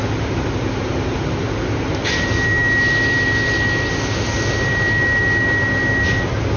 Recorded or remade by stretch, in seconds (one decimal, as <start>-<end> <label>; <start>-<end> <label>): 0.0-6.6 recorded